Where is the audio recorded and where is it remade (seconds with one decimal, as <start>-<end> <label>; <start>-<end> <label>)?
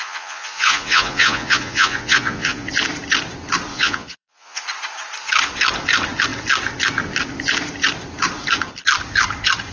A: 0.0-2.7 remade; 2.7-3.7 recorded; 3.7-4.6 remade; 4.6-9.7 recorded